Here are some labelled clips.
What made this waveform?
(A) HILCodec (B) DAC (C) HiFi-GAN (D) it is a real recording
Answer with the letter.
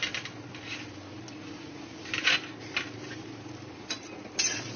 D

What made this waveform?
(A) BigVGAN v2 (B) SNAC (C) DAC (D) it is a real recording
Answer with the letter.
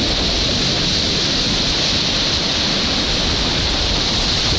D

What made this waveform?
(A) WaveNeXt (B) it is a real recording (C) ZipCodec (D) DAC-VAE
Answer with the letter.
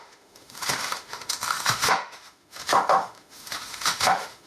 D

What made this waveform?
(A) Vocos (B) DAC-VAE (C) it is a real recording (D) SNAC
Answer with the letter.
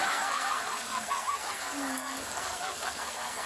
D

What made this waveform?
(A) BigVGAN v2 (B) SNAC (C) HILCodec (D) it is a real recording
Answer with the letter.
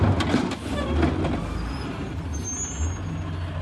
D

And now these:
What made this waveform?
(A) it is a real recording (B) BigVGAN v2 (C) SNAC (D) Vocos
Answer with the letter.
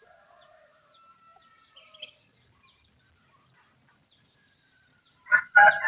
B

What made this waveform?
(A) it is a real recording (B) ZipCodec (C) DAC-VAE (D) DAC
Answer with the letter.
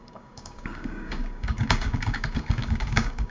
D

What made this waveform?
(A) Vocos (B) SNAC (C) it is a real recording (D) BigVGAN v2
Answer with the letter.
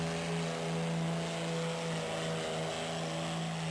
C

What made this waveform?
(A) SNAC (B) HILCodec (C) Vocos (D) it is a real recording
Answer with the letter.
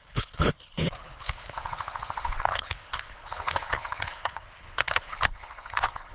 B